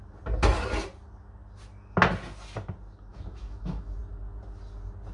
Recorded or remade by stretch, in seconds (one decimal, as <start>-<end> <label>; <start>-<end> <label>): 0.0-3.1 recorded; 3.1-4.0 remade; 4.0-5.1 recorded